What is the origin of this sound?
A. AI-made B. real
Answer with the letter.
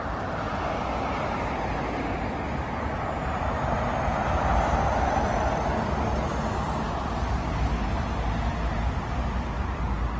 B